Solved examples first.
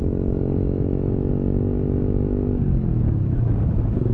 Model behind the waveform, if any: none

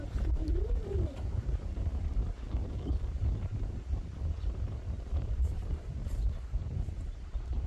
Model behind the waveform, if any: vocoder, BigVGAN v2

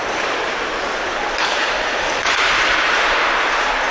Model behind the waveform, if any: vocoder, BigVGAN v2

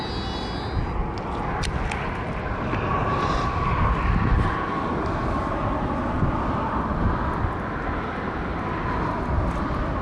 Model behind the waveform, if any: none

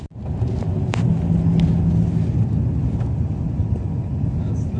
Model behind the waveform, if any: none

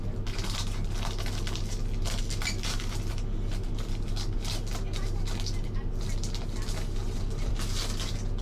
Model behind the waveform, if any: none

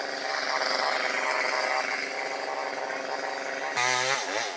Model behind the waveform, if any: none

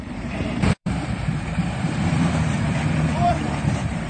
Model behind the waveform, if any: vocoder, BigVGAN v2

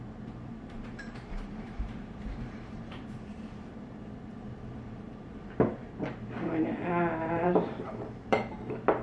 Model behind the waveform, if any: vocoder, BigVGAN v2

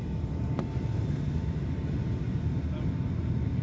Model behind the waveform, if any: none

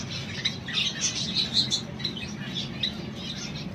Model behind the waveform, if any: none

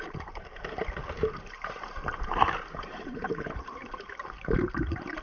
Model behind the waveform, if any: vocoder, BigVGAN v2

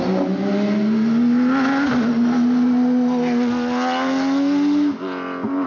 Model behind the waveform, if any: none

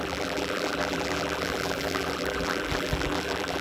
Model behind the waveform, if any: vocoder, BigVGAN v2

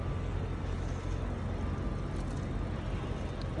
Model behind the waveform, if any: none